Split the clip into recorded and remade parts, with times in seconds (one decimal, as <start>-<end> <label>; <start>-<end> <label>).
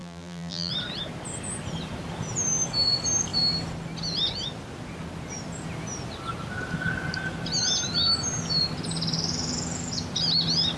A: 0.0-0.7 remade; 0.7-10.8 recorded